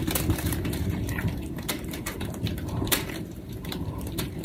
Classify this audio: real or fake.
fake